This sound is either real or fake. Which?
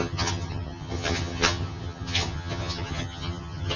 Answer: fake